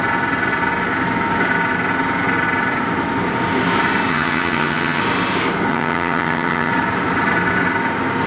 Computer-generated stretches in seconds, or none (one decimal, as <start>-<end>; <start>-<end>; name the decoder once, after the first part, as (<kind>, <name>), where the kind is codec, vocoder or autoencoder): 4.1-5.0 (vocoder, HiFi-GAN); 5.7-6.7